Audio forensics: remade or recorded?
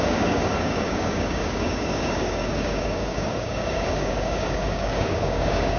remade